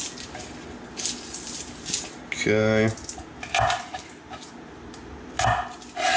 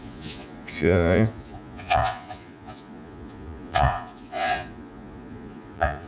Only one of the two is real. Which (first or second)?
first